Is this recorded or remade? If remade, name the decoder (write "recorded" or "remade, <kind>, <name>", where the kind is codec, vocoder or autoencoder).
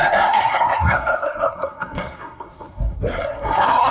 remade, codec, SNAC